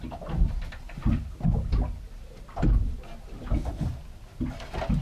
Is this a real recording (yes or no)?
yes